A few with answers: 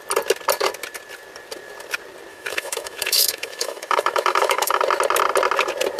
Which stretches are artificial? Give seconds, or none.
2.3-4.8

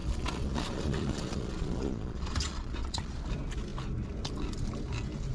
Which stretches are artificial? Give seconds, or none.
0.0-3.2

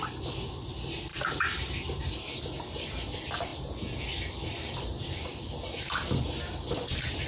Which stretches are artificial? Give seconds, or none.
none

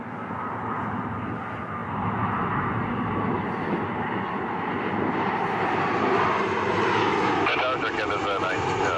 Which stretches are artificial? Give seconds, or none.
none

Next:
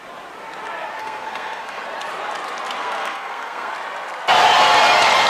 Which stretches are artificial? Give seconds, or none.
1.0-1.8; 2.8-3.7